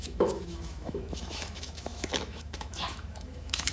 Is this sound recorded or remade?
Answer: remade